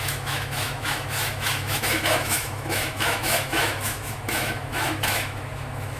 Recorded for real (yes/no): no